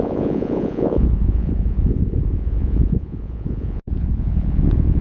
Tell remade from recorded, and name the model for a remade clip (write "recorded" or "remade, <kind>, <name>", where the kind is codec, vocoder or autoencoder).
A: remade, vocoder, Vocos